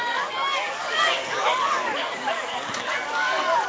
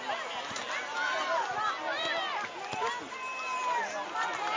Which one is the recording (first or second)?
second